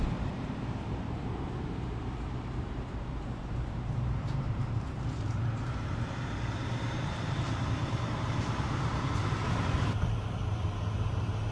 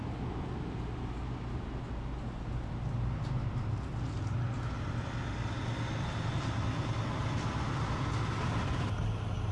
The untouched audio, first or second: second